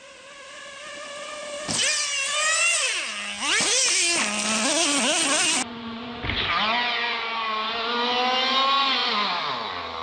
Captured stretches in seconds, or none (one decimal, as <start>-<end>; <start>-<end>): 0.0-10.0